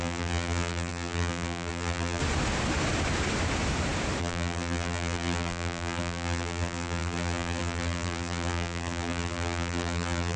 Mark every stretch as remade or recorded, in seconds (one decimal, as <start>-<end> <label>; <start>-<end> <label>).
0.0-2.2 remade; 2.2-4.2 recorded; 4.2-10.4 remade